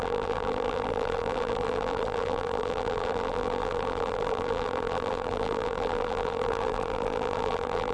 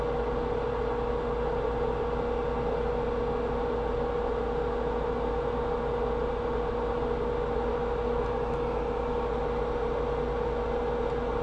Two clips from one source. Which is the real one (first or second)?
second